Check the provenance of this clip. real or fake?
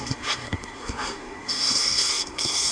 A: fake